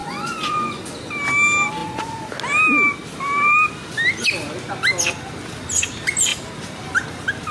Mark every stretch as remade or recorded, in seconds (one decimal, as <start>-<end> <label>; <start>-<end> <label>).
0.0-0.8 remade; 0.8-1.8 recorded; 1.8-2.3 remade; 2.3-7.5 recorded